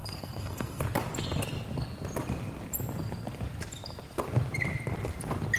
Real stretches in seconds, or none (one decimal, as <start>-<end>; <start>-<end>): 0.8-5.6